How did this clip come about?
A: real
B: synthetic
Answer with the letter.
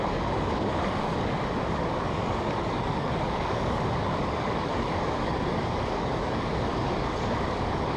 B